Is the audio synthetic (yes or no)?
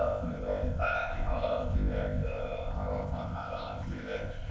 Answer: yes